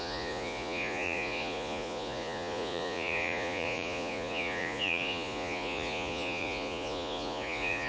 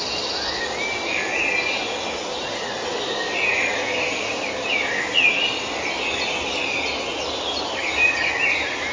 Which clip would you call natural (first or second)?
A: second